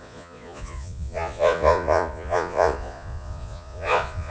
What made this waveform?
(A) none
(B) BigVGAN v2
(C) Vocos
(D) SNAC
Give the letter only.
C